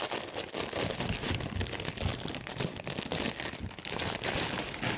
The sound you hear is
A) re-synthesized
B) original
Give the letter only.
B